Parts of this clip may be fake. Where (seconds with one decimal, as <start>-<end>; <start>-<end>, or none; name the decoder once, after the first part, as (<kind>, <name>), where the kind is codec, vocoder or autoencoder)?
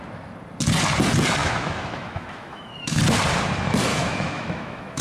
1.4-3.0 (autoencoder, DAC-VAE); 3.9-5.0